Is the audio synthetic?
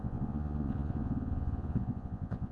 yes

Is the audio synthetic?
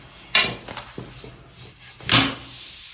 no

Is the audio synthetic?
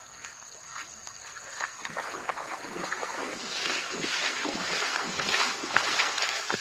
yes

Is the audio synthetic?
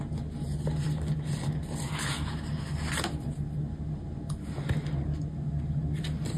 no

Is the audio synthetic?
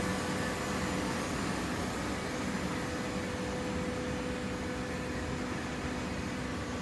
no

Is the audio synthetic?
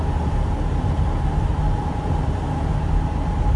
no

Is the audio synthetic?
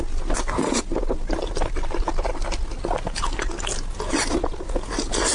no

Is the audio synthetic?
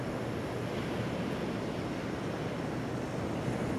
no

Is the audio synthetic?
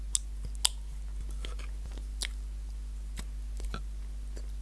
no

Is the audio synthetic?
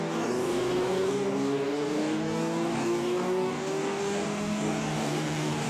yes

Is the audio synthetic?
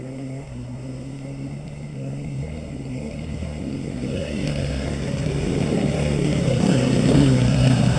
yes